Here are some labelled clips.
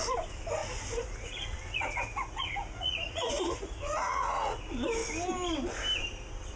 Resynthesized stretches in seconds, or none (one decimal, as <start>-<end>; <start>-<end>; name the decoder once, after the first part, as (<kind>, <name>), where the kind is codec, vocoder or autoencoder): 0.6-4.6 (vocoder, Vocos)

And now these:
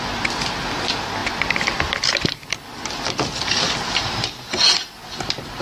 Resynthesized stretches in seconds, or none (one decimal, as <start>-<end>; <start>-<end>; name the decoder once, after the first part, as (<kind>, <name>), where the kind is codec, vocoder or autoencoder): 5.0-5.6 (vocoder, BigVGAN v2)

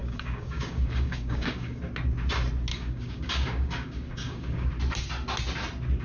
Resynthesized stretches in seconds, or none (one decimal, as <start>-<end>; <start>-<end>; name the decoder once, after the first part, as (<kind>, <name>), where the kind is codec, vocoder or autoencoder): 0.0-1.8 (codec, DAC); 2.7-4.7

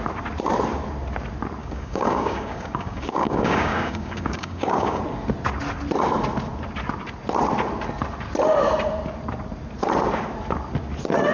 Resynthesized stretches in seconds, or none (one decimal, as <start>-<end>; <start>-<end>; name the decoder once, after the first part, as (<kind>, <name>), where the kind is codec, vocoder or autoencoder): 1.6-5.0 (codec, DAC)

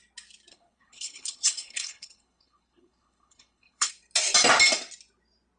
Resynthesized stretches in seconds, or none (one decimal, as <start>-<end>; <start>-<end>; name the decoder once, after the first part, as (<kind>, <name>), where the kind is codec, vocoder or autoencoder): 0.5-3.9 (codec, HILCodec)

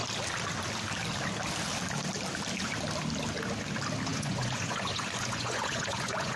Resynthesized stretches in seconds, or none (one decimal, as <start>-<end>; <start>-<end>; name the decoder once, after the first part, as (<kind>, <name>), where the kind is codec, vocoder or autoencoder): 4.1-6.4 (vocoder, Vocos)